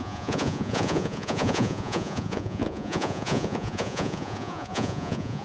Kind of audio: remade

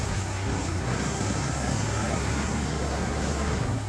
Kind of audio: remade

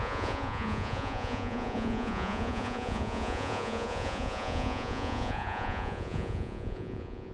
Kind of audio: remade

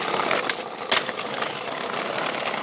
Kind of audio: recorded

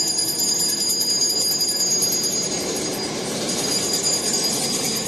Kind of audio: recorded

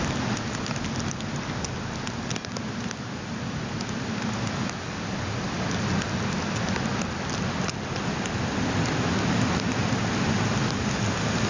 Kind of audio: recorded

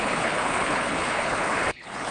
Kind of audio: remade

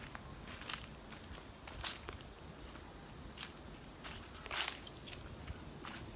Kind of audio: recorded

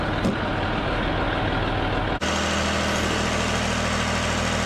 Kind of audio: recorded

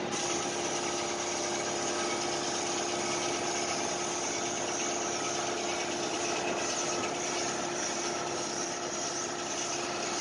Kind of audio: recorded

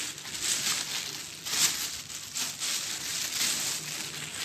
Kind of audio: recorded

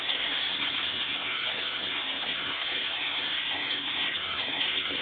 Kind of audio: remade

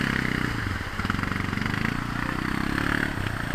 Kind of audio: recorded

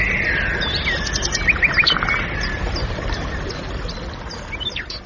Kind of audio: recorded